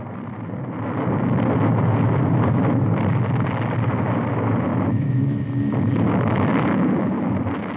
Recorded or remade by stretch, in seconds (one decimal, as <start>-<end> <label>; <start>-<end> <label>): 0.0-4.7 recorded; 4.7-5.2 remade; 5.2-7.8 recorded